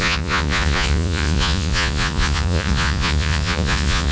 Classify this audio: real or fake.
fake